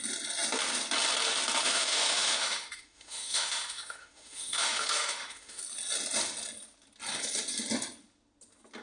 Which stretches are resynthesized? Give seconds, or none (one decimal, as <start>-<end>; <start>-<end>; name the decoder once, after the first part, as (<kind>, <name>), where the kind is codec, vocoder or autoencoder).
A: 1.6-5.6 (autoencoder, DAC-VAE)

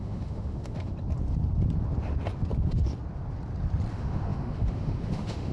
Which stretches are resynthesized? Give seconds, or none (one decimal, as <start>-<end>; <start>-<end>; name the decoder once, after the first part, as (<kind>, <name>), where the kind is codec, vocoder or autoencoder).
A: 0.0-0.9 (autoencoder, DAC-VAE); 3.9-5.5

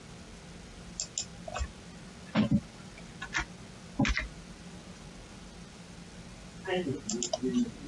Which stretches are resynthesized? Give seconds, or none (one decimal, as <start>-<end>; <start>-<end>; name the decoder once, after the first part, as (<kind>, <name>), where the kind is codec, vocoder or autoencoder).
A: none

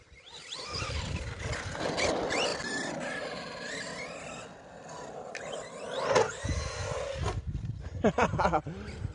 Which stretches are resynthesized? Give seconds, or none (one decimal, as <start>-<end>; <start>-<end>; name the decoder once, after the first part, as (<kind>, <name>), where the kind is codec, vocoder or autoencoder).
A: none